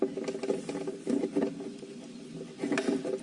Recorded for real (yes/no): yes